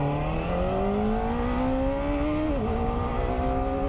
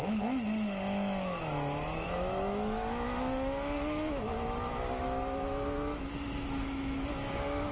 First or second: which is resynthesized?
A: second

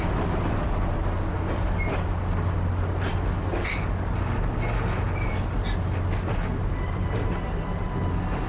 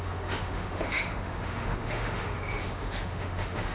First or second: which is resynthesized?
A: second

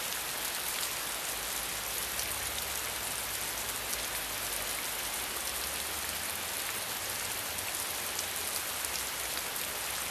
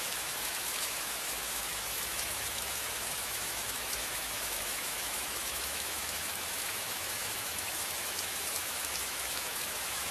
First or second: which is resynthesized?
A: second